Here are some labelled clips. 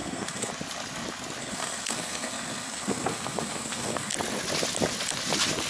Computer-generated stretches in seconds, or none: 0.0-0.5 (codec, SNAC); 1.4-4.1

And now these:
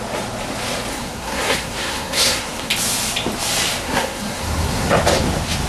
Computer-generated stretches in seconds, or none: 0.9-2.7 (codec, SNAC); 3.8-5.0